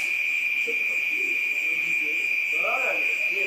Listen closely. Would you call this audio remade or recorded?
remade